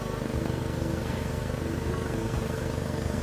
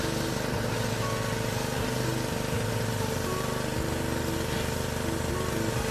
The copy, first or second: first